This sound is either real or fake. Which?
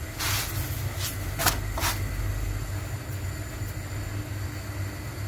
real